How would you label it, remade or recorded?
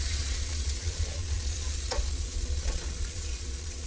remade